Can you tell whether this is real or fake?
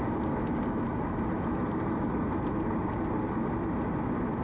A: real